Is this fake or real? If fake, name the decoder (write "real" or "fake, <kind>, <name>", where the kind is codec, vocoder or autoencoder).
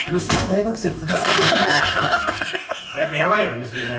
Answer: fake, codec, DAC